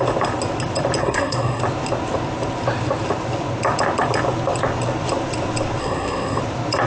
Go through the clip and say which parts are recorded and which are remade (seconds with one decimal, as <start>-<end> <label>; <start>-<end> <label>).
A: 0.0-1.0 recorded; 1.0-1.6 remade; 1.6-5.8 recorded; 5.8-6.4 remade; 6.4-6.9 recorded

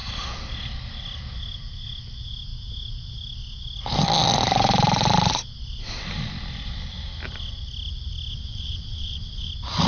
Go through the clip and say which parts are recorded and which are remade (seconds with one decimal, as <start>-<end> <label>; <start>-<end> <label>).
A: 0.0-8.3 recorded; 8.3-9.5 remade; 9.5-9.9 recorded

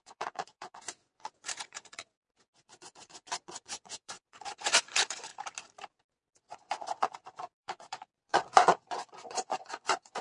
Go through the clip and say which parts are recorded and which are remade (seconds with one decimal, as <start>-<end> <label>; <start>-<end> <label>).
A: 0.0-5.3 remade; 5.3-6.0 recorded; 6.0-10.2 remade

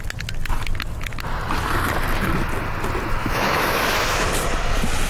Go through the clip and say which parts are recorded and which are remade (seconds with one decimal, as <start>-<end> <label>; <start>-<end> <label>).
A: 0.0-3.2 recorded; 3.2-4.3 remade; 4.3-5.1 recorded

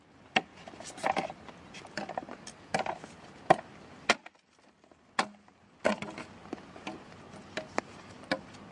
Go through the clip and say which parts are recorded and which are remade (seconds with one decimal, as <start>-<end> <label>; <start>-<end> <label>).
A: 0.0-8.7 recorded